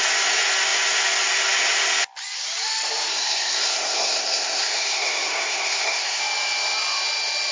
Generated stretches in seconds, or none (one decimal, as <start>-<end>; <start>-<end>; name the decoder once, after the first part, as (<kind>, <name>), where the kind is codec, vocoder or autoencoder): 3.1-6.2 (codec, SNAC)